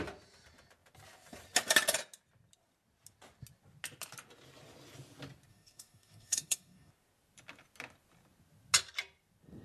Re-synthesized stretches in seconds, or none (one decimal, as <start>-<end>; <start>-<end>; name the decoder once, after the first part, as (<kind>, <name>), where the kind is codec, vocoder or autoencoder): 5.5-6.9 (codec, DAC)